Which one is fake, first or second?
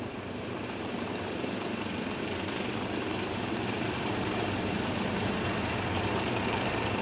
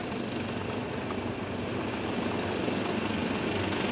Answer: first